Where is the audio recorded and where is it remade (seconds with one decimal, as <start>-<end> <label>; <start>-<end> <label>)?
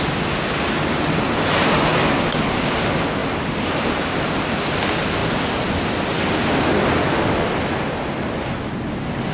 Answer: 0.0-5.2 recorded; 5.2-6.6 remade; 6.6-9.3 recorded